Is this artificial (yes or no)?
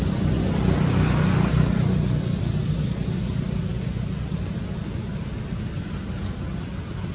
no